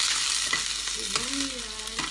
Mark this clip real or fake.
real